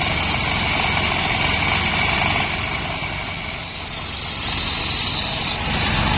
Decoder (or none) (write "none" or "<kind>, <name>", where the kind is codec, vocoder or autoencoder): none